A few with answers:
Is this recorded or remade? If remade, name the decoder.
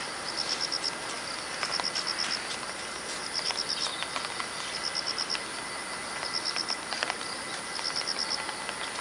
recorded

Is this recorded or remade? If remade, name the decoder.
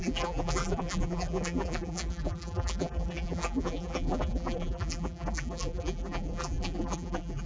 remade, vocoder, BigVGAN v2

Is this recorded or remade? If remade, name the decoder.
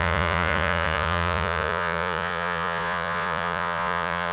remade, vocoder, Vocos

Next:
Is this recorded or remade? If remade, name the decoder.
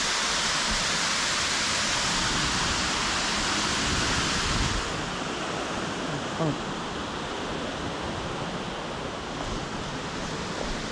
recorded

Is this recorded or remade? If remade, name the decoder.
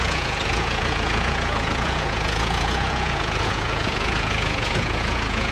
remade, vocoder, Vocos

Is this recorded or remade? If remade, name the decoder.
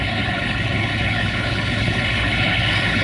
remade, codec, HILCodec